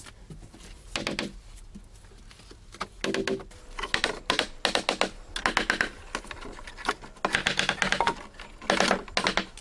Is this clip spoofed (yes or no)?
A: no